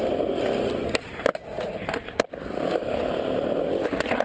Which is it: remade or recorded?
recorded